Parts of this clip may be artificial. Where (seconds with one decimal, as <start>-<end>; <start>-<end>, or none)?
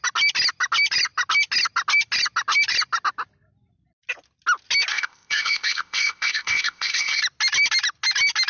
4.9-7.2